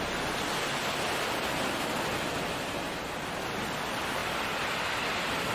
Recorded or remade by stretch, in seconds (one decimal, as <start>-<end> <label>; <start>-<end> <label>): 0.0-5.5 recorded